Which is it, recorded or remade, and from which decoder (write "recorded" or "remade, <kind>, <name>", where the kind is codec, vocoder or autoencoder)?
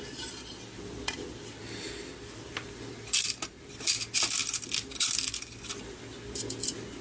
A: recorded